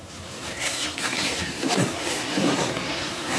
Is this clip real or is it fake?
fake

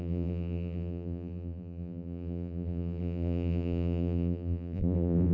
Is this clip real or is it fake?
fake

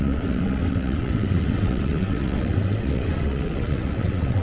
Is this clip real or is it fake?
fake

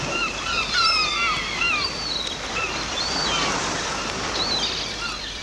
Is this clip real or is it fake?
fake